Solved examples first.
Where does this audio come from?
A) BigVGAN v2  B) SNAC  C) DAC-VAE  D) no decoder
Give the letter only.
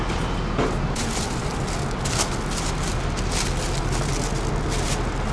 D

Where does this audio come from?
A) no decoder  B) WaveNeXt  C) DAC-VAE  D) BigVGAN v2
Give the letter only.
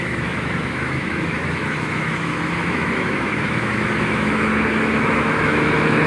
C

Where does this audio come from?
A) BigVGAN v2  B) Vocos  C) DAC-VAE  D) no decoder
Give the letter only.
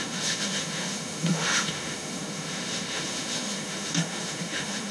C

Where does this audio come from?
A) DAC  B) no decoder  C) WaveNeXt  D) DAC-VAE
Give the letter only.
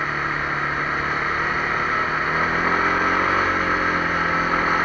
B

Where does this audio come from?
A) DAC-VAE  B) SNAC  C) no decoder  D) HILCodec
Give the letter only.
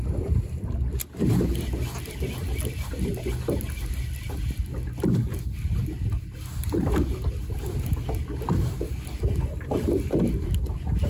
C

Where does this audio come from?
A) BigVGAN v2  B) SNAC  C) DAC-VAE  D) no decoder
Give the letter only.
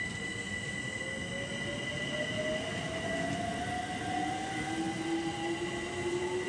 D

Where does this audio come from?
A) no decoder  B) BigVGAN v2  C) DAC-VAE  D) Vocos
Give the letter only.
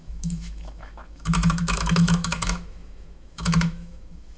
C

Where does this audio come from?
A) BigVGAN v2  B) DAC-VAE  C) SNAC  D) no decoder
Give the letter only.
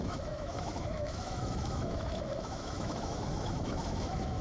B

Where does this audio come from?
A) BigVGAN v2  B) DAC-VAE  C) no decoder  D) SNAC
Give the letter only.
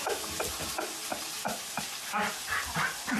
C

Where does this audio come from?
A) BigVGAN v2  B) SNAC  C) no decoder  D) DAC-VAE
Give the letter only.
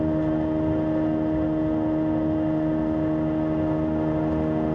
D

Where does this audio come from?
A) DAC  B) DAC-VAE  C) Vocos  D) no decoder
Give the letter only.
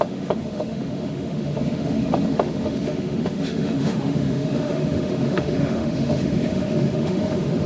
B